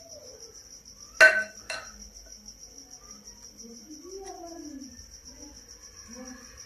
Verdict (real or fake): real